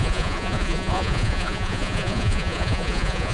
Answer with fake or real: fake